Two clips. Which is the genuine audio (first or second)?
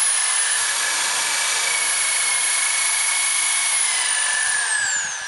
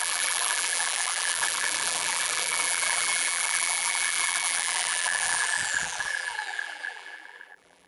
first